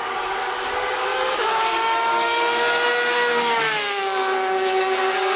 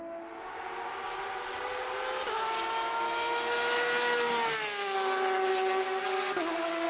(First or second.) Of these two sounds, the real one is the second